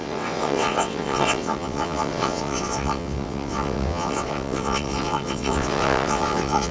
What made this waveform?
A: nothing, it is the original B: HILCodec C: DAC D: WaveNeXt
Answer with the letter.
D